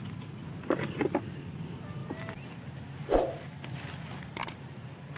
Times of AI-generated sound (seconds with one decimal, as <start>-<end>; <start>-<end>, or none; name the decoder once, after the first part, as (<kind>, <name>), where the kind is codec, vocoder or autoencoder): 0.4-1.0 (vocoder, BigVGAN v2)